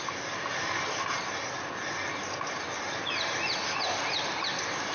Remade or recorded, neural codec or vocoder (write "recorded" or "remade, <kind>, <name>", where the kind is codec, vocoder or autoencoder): recorded